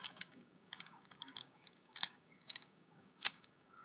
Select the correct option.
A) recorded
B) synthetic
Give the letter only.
B